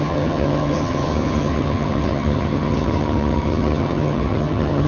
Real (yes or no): no